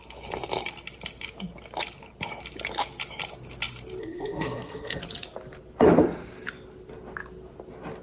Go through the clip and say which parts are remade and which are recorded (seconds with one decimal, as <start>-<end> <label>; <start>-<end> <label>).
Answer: 0.0-4.0 recorded; 4.0-5.0 remade; 5.0-8.0 recorded